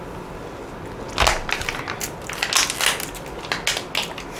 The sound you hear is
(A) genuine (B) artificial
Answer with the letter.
A